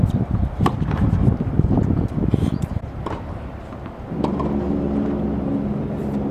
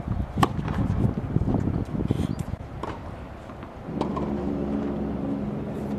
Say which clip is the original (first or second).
second